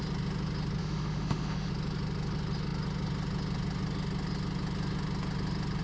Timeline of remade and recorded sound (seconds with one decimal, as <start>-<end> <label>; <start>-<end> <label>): 0.0-0.8 recorded; 0.8-1.7 remade; 1.7-5.8 recorded